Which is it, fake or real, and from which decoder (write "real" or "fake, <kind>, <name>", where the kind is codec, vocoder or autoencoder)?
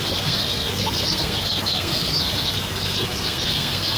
fake, codec, SNAC